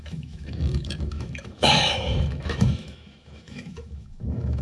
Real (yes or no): no